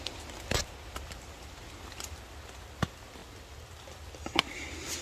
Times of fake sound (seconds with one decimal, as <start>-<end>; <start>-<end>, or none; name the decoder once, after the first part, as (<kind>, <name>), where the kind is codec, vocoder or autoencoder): none